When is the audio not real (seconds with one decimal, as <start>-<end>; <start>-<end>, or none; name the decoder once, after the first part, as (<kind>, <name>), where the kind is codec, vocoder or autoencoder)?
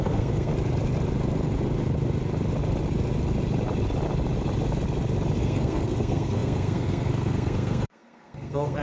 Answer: 0.0-0.5 (codec, SNAC); 5.4-8.8